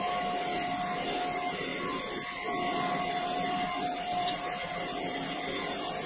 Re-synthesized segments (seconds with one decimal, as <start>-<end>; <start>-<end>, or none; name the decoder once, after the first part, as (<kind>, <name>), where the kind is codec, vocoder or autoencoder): none